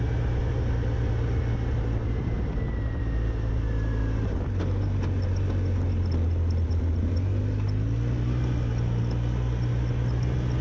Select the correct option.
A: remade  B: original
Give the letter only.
B